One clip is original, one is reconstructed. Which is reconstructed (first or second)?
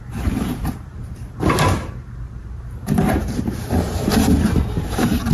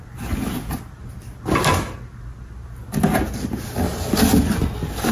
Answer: first